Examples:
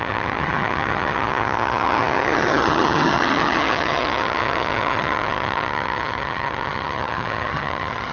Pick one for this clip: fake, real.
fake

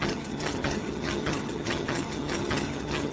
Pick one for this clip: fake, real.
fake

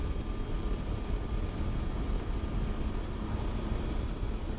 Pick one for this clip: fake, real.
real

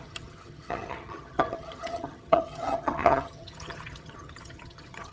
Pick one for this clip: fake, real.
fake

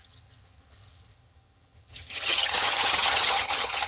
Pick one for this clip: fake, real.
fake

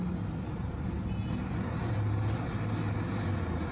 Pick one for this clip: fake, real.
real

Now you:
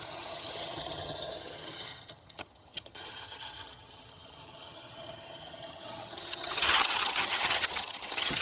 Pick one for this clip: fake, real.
fake